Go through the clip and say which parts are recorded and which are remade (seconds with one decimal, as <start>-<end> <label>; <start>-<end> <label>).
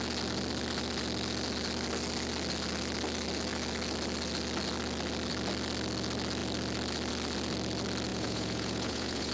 0.0-8.1 recorded; 8.1-9.3 remade